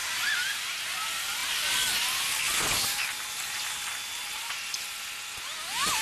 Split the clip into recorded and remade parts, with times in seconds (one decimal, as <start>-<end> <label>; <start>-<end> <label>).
0.0-6.0 recorded